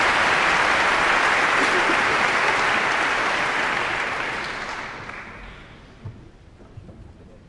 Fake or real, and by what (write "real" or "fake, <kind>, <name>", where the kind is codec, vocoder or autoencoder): real